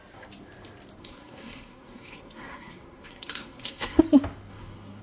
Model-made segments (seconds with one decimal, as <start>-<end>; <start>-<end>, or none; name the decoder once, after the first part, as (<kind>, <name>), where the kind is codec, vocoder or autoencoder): 1.0-4.0 (codec, SNAC); 4.5-5.0